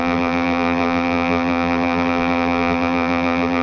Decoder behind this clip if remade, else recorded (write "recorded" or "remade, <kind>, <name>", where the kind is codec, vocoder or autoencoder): remade, vocoder, BigVGAN v2